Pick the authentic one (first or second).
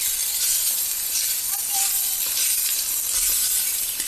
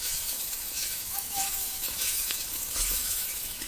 first